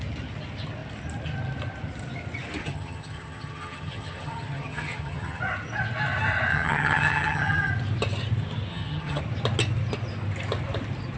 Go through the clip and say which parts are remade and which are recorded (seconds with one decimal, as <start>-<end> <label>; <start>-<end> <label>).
0.0-2.6 recorded; 2.6-5.4 remade; 5.4-6.5 recorded; 6.5-7.7 remade; 7.7-8.7 recorded; 8.7-9.2 remade; 9.2-11.2 recorded